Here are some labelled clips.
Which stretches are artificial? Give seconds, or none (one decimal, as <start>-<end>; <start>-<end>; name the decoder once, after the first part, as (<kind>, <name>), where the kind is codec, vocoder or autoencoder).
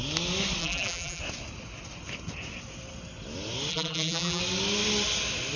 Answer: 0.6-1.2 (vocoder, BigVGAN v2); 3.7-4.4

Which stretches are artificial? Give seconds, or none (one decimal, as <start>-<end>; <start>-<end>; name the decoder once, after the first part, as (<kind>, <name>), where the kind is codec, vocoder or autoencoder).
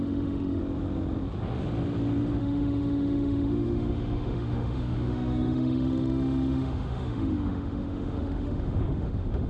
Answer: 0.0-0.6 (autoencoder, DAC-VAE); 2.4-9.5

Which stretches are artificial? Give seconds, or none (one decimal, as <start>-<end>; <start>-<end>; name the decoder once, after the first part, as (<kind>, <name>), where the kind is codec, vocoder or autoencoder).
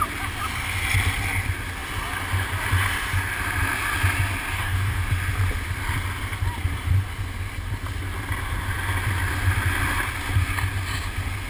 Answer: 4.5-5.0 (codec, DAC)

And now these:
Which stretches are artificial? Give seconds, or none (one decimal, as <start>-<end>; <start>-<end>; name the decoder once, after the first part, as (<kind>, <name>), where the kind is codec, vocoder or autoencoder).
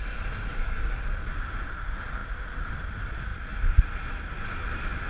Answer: 0.5-1.0 (codec, DAC)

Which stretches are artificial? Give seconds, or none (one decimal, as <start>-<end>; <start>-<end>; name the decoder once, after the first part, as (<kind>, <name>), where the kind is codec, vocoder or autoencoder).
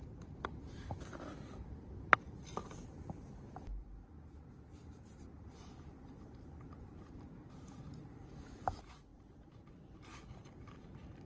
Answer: 9.1-11.3 (vocoder, BigVGAN v2)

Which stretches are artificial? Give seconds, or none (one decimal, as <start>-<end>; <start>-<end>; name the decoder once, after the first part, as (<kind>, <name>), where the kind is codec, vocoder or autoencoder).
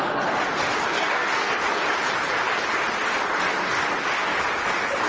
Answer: 0.9-1.5 (codec, SNAC)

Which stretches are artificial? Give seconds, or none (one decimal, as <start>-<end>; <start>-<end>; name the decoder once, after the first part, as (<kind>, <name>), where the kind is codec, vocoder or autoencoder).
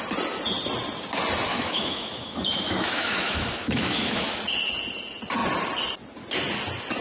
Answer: 1.5-4.4 (autoencoder, DAC-VAE)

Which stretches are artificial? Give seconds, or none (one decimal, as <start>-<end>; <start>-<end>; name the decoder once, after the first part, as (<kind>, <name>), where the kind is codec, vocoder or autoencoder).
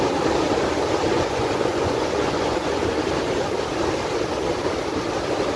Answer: 1.1-2.8 (vocoder, Vocos)